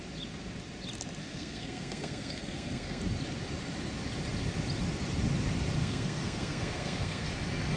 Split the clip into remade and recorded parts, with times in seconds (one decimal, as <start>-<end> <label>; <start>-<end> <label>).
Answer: 0.0-1.2 recorded; 1.2-3.0 remade; 3.0-5.8 recorded; 5.8-7.3 remade; 7.3-7.8 recorded